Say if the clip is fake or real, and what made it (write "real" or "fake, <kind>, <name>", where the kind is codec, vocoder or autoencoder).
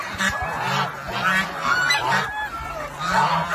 real